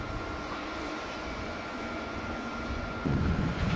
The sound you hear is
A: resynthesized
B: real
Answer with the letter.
A